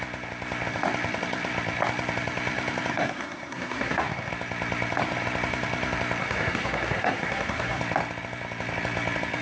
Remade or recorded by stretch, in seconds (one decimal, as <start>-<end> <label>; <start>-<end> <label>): 0.0-2.9 recorded; 2.9-4.3 remade; 4.3-6.2 recorded; 6.2-7.8 remade; 7.8-9.4 recorded